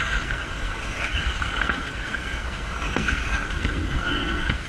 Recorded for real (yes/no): no